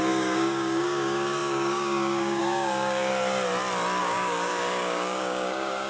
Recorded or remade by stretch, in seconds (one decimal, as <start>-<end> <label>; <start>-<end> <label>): 0.0-3.1 remade; 3.1-4.0 recorded; 4.0-5.9 remade